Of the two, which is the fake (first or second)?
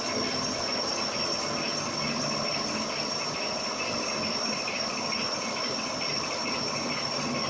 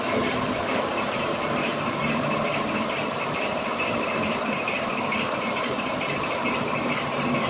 second